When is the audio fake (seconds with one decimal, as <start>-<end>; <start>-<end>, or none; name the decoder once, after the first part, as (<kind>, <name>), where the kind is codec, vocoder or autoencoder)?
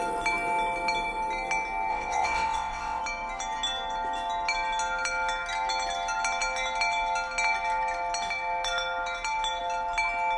1.9-3.0 (vocoder, WaveNeXt)